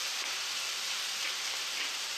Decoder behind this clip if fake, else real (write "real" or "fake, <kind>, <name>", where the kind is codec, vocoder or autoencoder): fake, vocoder, BigVGAN v2